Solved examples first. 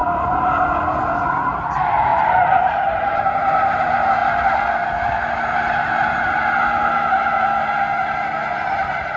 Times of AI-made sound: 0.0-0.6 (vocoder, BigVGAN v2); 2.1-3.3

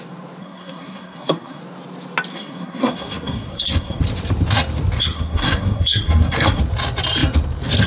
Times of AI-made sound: 0.4-1.6 (codec, SNAC); 2.3-4.0; 5.0-6.6